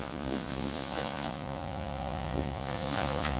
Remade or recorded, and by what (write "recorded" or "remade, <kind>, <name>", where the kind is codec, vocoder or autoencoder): remade, vocoder, Vocos